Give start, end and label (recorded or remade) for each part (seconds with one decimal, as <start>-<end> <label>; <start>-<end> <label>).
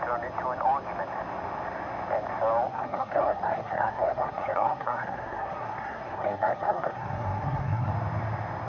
0.0-2.7 recorded; 2.7-7.9 remade; 7.9-8.7 recorded